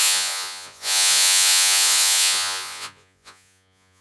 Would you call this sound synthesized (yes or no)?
yes